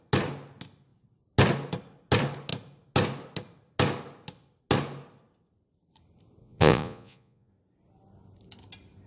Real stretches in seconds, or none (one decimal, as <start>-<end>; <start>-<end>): 0.0-6.4; 7.5-9.1